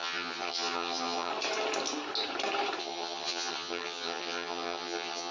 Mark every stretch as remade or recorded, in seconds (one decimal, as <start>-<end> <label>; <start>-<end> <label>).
0.0-1.3 remade; 1.3-2.8 recorded; 2.8-5.3 remade